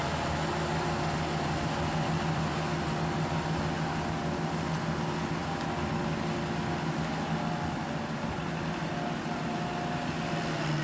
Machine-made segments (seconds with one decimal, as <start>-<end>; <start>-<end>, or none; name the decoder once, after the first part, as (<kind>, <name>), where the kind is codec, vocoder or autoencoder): none